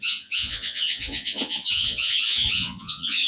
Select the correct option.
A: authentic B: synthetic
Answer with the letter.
B